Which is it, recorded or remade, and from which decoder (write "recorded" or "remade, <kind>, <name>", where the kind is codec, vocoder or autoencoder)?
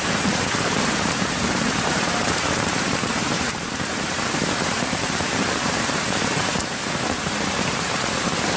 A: remade, vocoder, BigVGAN v2